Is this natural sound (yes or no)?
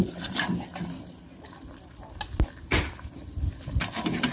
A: yes